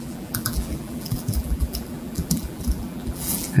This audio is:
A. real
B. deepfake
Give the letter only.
B